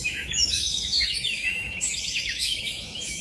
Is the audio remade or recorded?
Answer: remade